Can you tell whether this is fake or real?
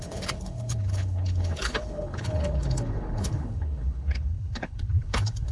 fake